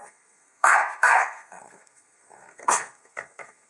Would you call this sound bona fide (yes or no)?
no